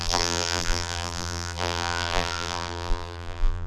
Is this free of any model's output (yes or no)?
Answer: no